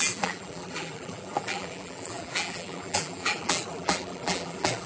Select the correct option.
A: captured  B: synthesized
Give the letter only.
B